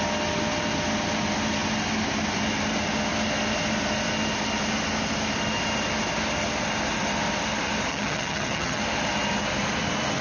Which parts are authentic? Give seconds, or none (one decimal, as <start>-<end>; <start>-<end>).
0.0-7.9; 8.8-10.2